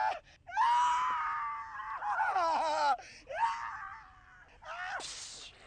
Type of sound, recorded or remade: recorded